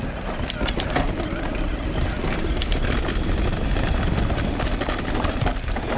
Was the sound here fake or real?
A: real